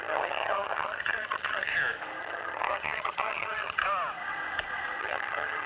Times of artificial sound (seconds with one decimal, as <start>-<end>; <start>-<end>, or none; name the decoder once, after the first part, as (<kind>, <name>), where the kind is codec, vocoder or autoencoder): 0.0-1.7 (vocoder, HiFi-GAN); 2.2-3.8; 5.0-5.7